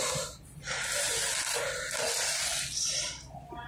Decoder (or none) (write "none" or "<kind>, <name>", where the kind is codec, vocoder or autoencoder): none